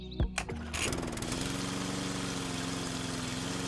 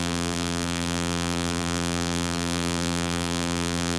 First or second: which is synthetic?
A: second